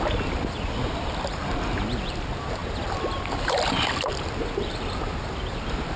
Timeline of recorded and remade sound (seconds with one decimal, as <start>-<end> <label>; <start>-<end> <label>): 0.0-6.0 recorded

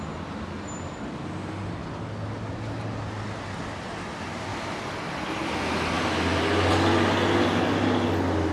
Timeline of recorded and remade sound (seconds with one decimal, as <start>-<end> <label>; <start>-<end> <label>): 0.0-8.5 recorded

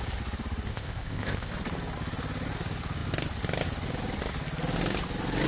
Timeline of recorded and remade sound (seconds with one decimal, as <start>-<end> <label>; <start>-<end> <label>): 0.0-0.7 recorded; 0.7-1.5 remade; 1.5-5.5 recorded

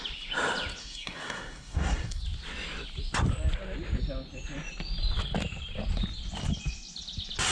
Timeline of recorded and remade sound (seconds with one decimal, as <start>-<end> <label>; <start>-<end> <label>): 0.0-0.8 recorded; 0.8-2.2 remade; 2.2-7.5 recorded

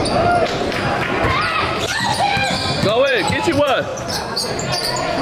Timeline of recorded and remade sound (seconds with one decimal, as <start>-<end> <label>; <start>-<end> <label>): 0.0-3.9 remade; 3.9-4.5 recorded; 4.5-5.2 remade

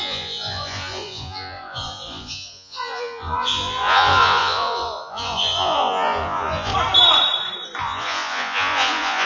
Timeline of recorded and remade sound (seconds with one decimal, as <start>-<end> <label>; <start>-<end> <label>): 0.0-6.7 remade; 6.7-7.8 recorded; 7.8-9.3 remade

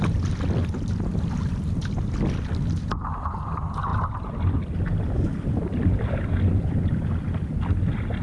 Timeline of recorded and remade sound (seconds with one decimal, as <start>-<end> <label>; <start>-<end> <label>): 0.0-3.9 recorded; 3.9-7.6 remade; 7.6-8.2 recorded